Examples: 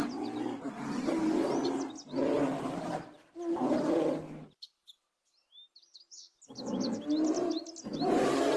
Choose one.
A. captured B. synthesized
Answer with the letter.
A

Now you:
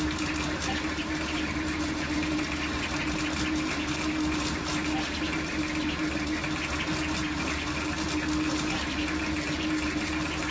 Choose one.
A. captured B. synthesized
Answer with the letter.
A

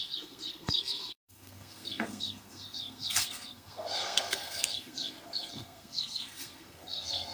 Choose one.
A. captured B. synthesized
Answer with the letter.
B